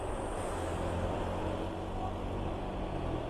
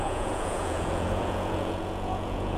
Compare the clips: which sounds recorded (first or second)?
first